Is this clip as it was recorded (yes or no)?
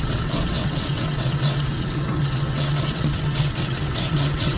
no